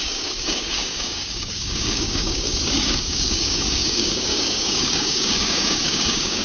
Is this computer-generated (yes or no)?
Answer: yes